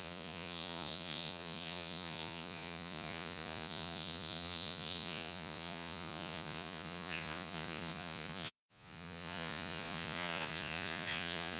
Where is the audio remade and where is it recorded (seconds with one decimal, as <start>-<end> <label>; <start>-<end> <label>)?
0.0-11.6 remade